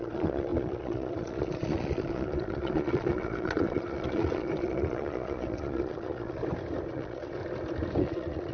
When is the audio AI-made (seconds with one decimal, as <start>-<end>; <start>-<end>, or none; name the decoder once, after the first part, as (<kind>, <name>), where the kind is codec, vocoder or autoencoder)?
0.0-6.4 (vocoder, Vocos); 6.9-7.4; 8.0-8.5